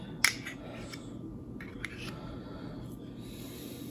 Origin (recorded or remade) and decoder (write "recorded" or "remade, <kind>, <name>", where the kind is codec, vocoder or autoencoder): recorded